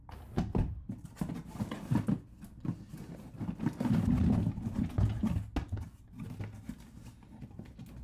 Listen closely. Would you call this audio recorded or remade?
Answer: recorded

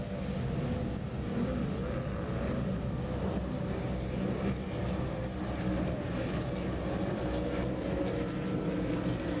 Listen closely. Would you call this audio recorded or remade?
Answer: recorded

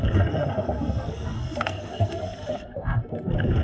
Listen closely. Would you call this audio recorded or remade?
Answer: remade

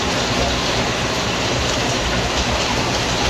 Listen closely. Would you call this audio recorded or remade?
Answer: remade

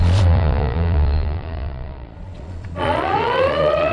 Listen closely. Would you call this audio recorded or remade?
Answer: remade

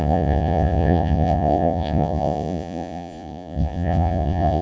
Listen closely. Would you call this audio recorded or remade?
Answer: remade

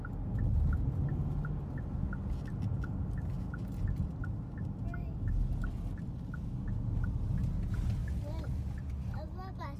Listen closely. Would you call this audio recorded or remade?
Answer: recorded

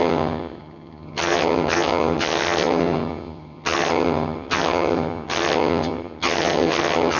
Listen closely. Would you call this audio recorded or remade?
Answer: remade